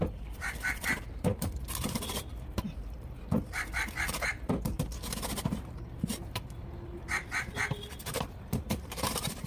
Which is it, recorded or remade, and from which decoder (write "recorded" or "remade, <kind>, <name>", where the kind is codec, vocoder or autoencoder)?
remade, vocoder, BigVGAN v2